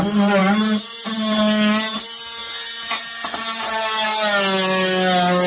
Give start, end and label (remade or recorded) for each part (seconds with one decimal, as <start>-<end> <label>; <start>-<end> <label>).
0.0-5.5 recorded